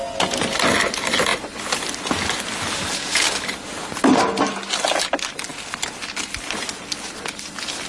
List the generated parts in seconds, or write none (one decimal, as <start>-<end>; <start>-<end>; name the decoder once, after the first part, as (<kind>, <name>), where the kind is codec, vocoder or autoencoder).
none